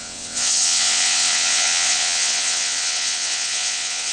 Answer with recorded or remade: remade